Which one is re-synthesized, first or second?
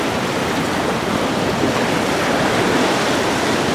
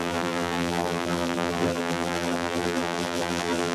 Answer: second